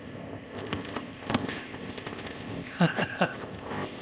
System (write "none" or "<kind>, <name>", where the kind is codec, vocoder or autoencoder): codec, ZipCodec